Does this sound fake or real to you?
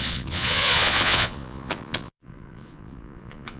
fake